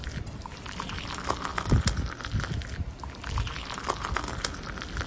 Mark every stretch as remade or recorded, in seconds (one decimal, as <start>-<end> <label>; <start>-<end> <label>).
0.0-1.1 remade; 1.1-5.1 recorded